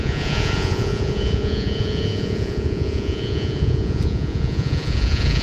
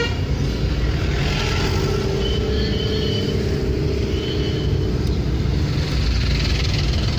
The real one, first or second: second